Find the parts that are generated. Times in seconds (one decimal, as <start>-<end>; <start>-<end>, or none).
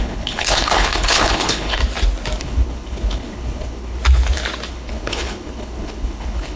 0.0-1.8; 2.4-4.0; 4.7-6.6